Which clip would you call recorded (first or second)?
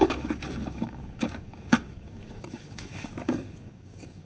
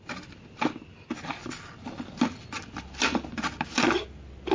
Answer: second